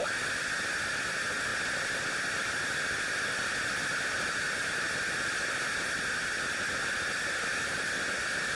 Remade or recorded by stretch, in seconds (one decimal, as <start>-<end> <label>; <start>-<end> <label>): 0.0-8.6 recorded